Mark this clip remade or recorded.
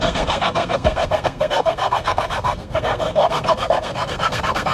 remade